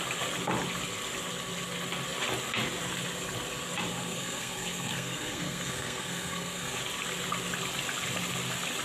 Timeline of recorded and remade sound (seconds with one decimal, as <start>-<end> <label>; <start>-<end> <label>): 0.0-3.9 recorded; 3.9-6.8 remade; 6.8-8.8 recorded